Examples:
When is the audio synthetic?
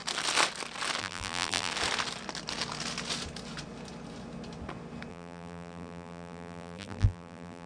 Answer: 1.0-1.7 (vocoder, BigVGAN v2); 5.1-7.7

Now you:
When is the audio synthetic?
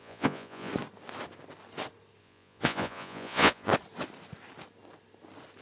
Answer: 0.0-0.7 (vocoder, Vocos); 2.2-3.7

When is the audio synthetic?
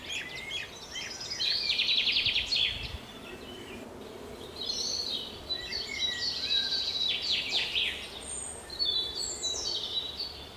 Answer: 2.5-5.1 (vocoder, BigVGAN v2)